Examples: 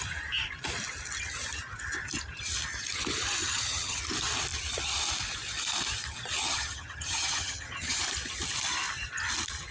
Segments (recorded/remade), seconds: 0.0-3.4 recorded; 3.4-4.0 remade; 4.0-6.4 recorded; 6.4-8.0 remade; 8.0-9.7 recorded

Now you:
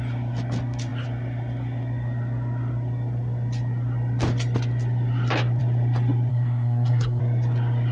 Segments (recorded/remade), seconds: 0.0-6.3 recorded; 6.3-7.2 remade; 7.2-7.9 recorded

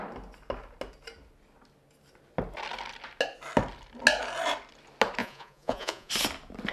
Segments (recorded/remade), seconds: 0.0-5.2 recorded; 5.2-6.1 remade; 6.1-6.7 recorded

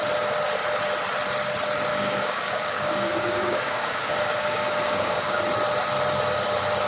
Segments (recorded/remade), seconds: 0.0-1.9 recorded; 1.9-5.4 remade; 5.4-6.9 recorded